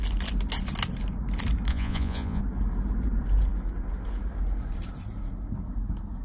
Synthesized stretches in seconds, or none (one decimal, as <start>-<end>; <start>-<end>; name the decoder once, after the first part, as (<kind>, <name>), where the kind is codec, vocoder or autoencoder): 1.7-2.4 (vocoder, Vocos)